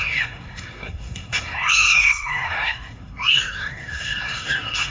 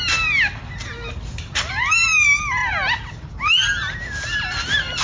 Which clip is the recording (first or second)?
second